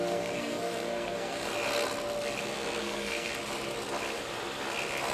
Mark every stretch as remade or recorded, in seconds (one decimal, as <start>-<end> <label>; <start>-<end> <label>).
0.0-1.5 remade; 1.5-2.8 recorded; 2.8-3.3 remade; 3.3-5.1 recorded